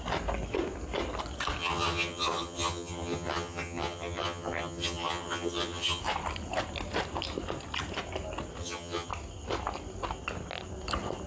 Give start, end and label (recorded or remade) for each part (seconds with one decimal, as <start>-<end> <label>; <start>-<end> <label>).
0.0-1.6 recorded; 1.6-6.0 remade; 6.0-8.6 recorded; 8.6-9.1 remade; 9.1-11.3 recorded